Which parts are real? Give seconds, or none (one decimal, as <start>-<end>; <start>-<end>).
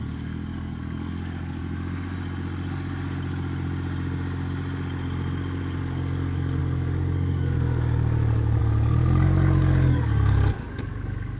1.6-5.8